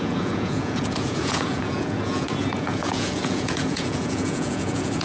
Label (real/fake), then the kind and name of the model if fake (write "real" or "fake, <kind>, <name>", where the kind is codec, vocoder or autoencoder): fake, vocoder, Vocos